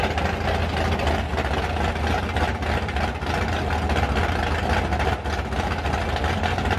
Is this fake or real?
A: real